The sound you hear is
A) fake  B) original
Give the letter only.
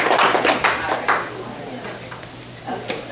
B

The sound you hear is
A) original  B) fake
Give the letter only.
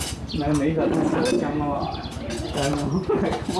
A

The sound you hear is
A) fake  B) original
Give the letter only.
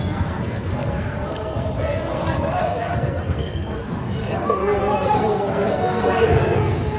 A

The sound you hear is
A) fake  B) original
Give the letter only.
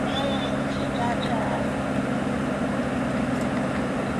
B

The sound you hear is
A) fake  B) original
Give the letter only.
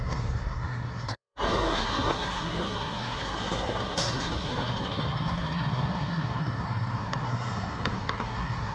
A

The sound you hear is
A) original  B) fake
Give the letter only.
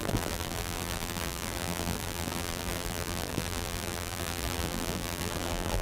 B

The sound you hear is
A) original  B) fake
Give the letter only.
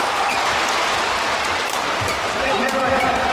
B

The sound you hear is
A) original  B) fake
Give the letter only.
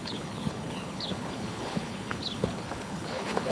B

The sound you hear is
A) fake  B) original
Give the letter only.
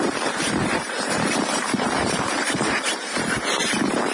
A